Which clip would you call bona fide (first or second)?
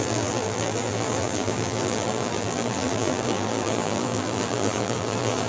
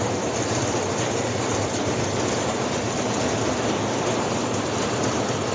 second